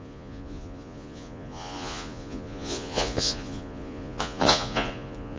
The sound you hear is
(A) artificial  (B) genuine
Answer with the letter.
A